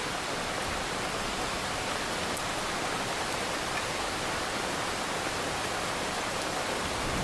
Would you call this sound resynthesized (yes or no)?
yes